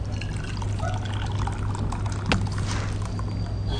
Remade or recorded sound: recorded